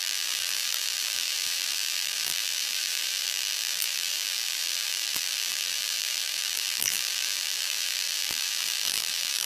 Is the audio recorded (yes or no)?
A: no